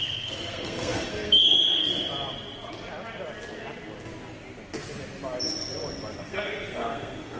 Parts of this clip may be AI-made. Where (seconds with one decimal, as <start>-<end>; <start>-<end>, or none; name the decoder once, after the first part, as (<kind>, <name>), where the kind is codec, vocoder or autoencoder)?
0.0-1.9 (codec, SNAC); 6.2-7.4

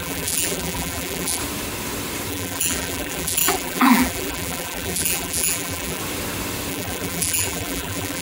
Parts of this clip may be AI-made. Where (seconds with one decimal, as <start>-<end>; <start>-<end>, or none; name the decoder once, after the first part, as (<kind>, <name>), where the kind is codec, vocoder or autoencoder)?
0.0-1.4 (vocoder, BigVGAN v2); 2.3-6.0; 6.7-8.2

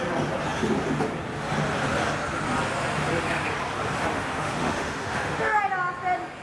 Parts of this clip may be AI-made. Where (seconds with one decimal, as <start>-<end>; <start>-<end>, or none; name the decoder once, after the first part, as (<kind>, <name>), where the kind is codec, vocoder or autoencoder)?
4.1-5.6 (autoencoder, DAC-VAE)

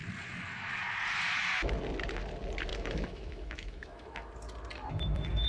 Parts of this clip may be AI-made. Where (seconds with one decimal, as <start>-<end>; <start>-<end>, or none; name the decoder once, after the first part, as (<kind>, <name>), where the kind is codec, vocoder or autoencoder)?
2.7-4.3 (autoencoder, DAC-VAE)

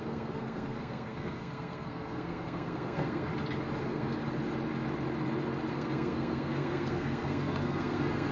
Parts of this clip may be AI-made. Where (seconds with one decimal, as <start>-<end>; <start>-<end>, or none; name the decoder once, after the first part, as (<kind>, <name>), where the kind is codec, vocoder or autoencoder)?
0.0-3.3 (codec, SNAC); 3.8-4.2; 5.7-8.3

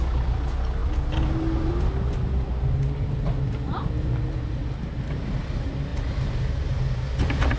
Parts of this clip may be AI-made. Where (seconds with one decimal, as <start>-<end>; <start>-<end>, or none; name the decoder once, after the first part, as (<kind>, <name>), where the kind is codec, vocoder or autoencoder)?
none

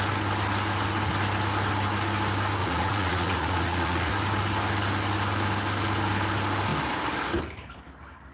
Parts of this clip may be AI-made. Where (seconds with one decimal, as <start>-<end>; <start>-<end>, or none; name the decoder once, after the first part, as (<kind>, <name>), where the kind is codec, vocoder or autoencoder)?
2.6-4.1 (vocoder, Vocos)

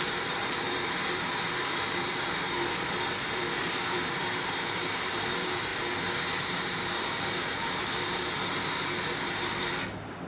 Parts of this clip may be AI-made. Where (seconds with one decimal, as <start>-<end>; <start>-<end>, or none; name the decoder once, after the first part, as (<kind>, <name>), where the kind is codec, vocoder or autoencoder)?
0.0-5.7 (vocoder, BigVGAN v2); 6.4-8.6; 9.2-10.3